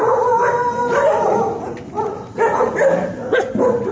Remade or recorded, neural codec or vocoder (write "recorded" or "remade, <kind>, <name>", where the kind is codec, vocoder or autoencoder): recorded